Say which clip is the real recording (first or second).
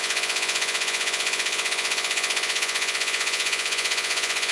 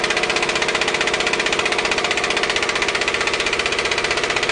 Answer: second